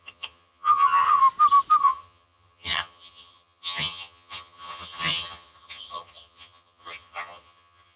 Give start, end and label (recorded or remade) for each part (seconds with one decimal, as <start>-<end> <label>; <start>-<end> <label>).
0.0-1.2 remade; 1.2-1.8 recorded; 1.8-8.0 remade